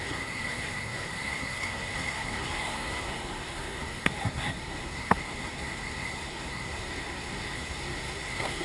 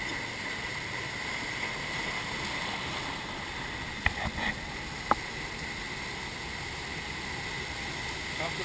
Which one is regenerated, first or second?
first